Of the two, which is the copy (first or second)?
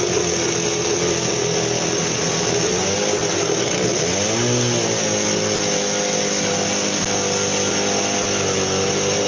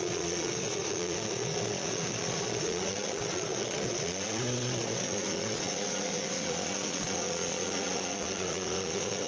second